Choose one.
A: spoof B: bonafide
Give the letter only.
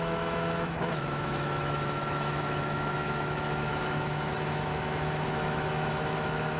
A